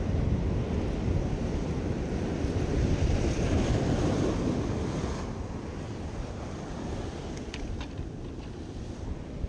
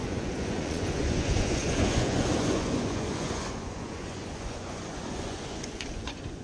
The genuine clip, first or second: first